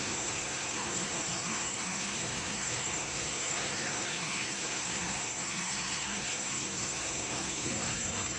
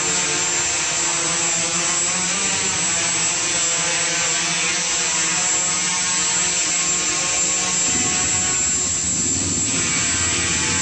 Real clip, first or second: second